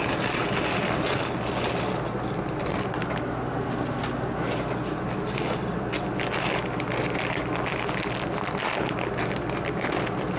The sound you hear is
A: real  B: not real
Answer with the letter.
A